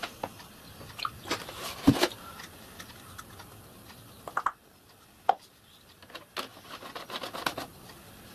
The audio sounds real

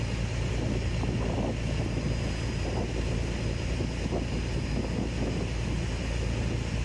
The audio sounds real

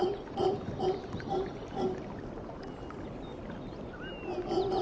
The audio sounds real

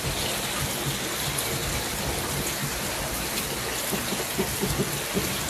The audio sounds real